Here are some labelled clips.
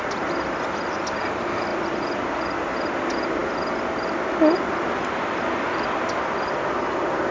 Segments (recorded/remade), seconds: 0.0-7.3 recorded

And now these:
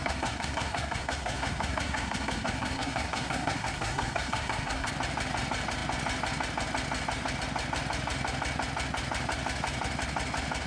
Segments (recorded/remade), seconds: 0.0-4.9 remade; 4.9-10.7 recorded

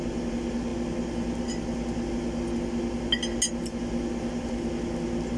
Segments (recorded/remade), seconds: 0.0-5.4 recorded

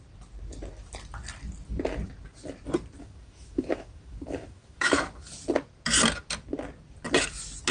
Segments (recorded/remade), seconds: 0.0-3.0 recorded; 3.0-5.3 remade; 5.3-7.7 recorded